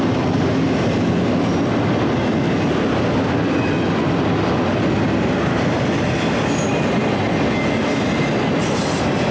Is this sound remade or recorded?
recorded